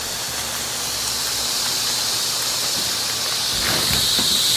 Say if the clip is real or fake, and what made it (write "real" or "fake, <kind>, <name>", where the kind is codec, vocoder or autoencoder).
real